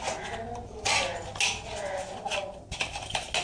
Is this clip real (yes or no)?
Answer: yes